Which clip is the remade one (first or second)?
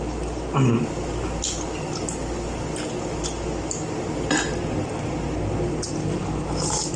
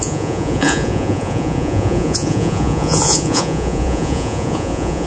second